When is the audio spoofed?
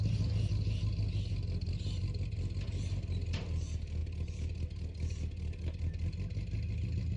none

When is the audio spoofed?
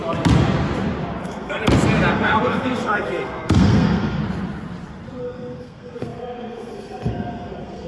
1.2-1.6 (codec, SNAC); 2.1-4.2; 5.2-7.9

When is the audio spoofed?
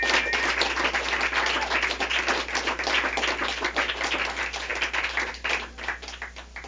none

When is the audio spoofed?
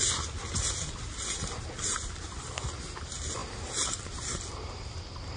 none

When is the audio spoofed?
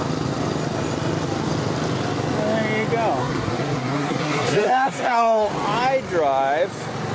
3.2-5.5 (codec, SNAC)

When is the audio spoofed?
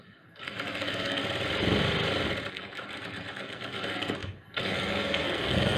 0.0-1.2 (codec, SNAC); 2.5-5.8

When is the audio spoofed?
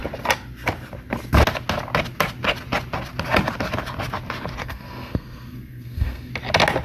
4.6-6.3 (codec, SNAC)